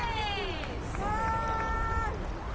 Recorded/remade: recorded